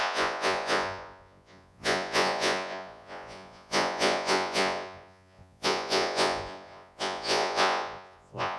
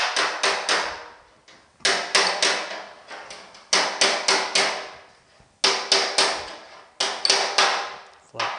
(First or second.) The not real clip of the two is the first